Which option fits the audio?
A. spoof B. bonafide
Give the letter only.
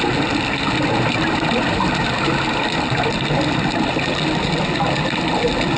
B